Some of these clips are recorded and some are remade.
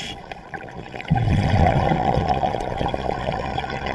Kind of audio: remade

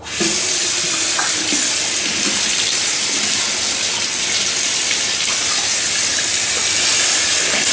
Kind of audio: recorded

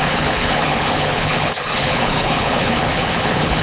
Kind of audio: remade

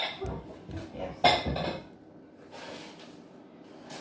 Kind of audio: recorded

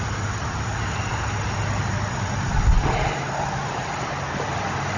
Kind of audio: recorded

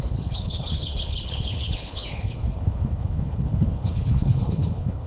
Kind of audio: remade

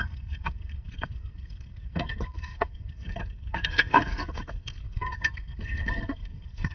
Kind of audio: remade